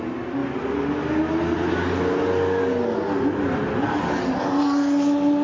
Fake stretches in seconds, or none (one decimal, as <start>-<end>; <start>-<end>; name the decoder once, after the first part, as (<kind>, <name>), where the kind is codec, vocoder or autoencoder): none